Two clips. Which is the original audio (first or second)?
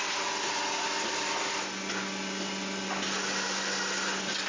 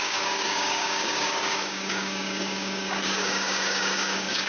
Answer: first